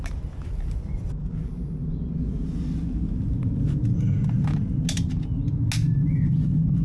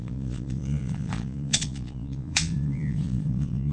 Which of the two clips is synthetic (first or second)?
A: second